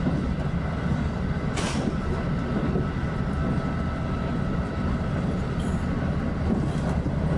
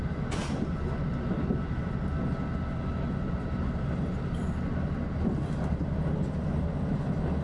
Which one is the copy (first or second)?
first